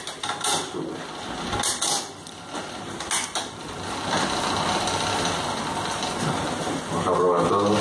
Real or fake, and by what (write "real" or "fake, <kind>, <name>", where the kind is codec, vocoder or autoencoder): real